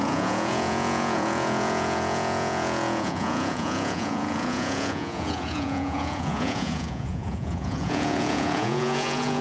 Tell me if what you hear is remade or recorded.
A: remade